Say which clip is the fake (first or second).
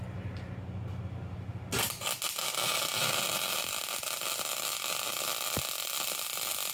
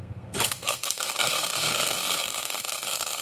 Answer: second